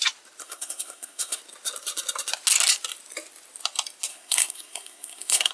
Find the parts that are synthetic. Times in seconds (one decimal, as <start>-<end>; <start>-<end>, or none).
0.4-1.4; 4.1-5.5

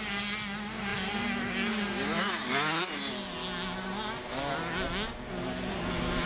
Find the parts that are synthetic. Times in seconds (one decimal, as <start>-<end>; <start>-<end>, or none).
none

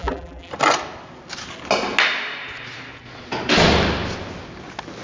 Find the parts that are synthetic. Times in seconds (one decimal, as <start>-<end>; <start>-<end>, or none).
0.0-0.5

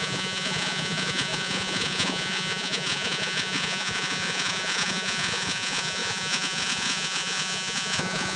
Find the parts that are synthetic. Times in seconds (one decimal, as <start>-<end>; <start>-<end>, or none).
0.0-8.4

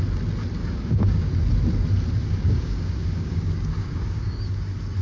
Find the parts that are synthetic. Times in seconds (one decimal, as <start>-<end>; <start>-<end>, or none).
0.6-1.3; 2.2-4.4

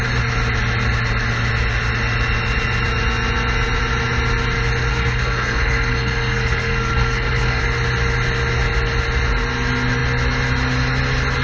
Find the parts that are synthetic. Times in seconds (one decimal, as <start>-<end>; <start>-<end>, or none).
4.9-7.6